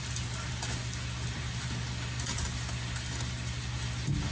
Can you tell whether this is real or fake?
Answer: real